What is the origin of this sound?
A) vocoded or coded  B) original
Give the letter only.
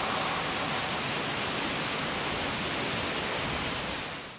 B